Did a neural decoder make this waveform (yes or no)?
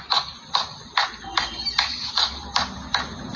no